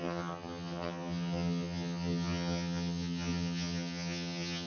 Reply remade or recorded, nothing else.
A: remade